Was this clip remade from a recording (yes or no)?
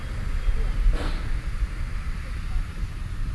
no